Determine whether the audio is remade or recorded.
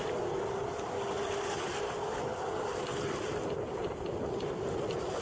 recorded